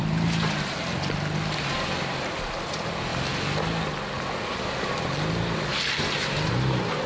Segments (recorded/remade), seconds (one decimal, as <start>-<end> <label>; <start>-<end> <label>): 0.0-7.1 recorded